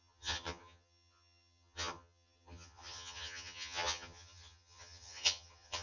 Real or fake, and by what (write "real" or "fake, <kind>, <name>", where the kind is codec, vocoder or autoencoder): fake, vocoder, HiFi-GAN